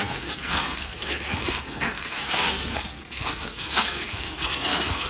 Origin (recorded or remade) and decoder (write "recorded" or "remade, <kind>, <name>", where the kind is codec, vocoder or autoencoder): remade, codec, SNAC